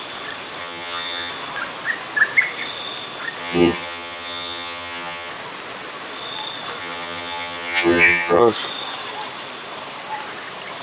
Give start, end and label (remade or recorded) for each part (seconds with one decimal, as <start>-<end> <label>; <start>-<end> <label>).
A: 0.0-0.6 recorded; 0.6-1.3 remade; 1.3-3.4 recorded; 3.4-5.3 remade; 5.3-6.8 recorded; 6.8-8.4 remade; 8.4-10.8 recorded